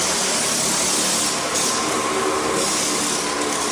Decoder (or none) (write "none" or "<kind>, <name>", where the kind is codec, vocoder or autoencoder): none